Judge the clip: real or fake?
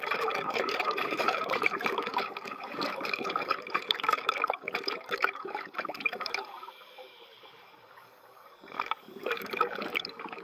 fake